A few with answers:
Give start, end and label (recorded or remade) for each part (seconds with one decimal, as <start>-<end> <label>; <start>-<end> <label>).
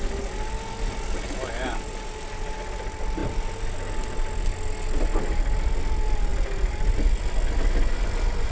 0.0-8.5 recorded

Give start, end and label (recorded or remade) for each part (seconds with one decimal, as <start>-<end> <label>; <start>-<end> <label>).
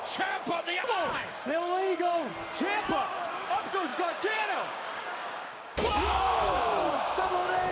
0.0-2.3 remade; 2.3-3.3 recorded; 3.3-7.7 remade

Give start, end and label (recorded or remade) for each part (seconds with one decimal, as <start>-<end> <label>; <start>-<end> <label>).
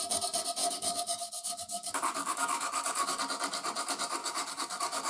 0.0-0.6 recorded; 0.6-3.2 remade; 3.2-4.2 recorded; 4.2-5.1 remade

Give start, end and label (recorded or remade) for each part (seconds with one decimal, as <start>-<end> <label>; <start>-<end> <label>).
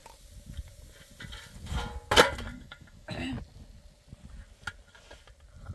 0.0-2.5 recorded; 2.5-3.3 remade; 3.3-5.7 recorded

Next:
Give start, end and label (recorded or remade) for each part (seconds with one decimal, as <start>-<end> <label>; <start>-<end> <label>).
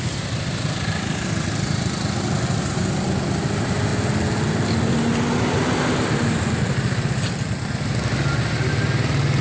0.0-9.4 recorded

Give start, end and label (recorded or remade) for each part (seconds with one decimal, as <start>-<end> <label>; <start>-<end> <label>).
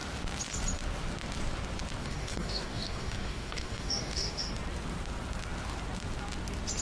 0.0-2.0 recorded; 2.0-4.5 remade; 4.5-6.8 recorded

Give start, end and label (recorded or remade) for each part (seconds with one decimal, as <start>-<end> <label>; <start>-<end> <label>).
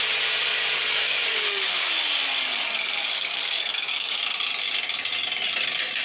0.0-0.5 recorded; 0.5-1.9 remade; 1.9-2.3 recorded; 2.3-4.2 remade; 4.2-6.0 recorded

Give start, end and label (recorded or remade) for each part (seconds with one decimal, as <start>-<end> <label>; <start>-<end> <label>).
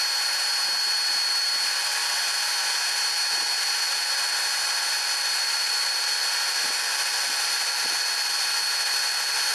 0.0-9.5 recorded